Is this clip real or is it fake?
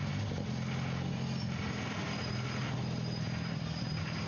real